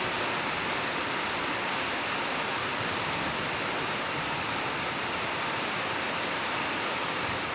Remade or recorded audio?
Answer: remade